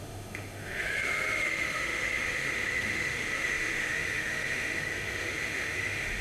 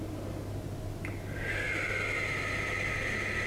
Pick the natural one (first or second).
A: second